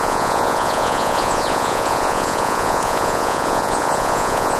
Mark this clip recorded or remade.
remade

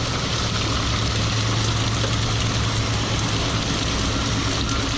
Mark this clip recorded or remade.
recorded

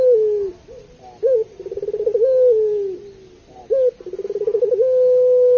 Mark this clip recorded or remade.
recorded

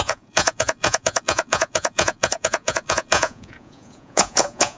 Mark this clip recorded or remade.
remade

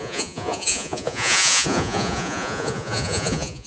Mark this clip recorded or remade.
remade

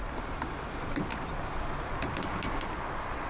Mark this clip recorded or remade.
recorded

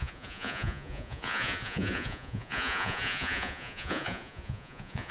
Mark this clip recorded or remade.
remade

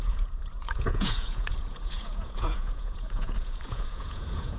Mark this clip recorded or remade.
remade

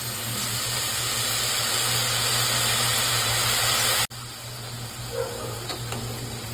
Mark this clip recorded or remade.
recorded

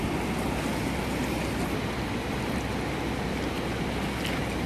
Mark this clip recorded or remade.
recorded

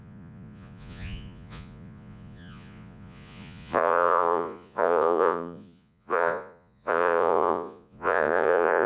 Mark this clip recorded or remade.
remade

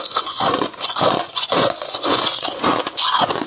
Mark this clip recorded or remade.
remade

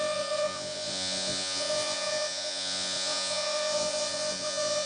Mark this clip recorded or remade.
remade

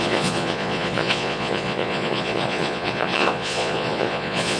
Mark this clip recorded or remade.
remade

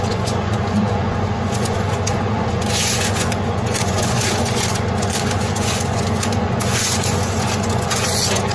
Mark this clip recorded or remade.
remade